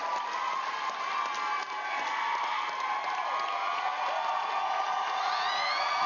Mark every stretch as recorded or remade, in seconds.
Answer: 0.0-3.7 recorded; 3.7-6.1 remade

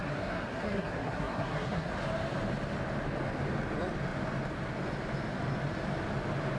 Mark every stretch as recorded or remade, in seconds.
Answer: 0.0-1.9 remade; 1.9-6.6 recorded

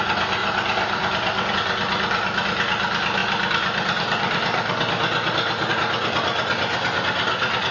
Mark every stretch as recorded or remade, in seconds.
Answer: 0.0-0.4 recorded; 0.4-1.5 remade; 1.5-7.7 recorded